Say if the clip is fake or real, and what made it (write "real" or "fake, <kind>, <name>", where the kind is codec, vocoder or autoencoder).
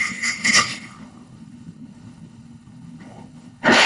fake, codec, HILCodec